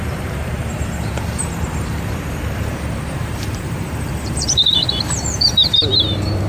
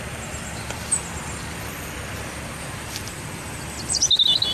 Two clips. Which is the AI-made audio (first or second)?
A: first